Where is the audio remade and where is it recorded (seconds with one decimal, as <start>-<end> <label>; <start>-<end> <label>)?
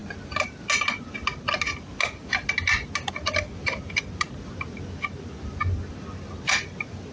0.0-7.1 recorded